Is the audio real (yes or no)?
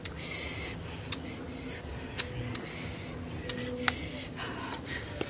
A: yes